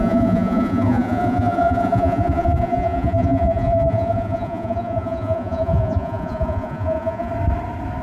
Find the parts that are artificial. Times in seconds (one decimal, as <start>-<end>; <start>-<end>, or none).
0.0-7.3